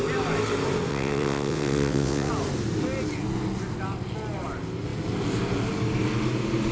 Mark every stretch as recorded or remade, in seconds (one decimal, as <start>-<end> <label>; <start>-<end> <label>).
0.0-0.9 recorded; 0.9-2.3 remade; 2.3-6.7 recorded